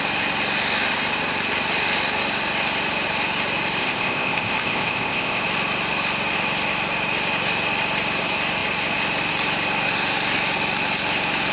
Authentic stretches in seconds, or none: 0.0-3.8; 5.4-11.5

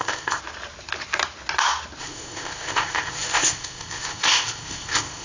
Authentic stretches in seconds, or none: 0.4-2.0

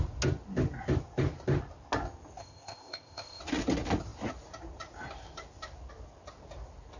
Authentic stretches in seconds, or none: 0.0-2.4; 3.4-7.0